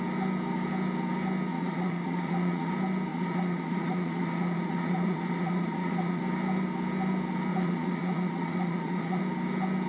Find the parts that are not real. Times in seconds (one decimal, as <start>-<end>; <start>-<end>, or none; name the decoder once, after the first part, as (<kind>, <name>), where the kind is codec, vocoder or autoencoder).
1.5-2.7 (vocoder, Vocos); 3.1-6.2; 7.5-9.2